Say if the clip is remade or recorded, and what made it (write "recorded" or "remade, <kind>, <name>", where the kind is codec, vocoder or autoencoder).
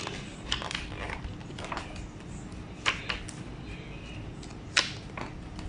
recorded